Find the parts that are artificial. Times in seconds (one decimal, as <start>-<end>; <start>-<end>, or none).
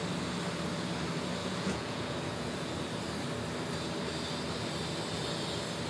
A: 1.4-2.7